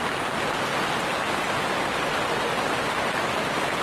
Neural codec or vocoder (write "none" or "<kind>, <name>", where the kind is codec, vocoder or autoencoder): none